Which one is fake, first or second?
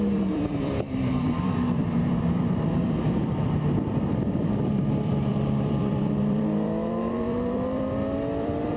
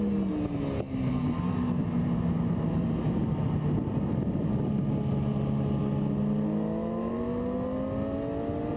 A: first